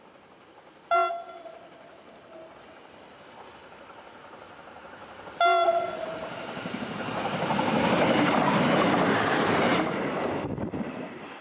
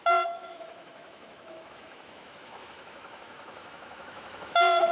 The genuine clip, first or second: first